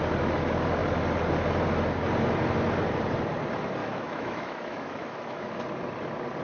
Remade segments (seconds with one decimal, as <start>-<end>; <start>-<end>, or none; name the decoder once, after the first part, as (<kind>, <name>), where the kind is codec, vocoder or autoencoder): 3.8-5.6 (autoencoder, DAC-VAE)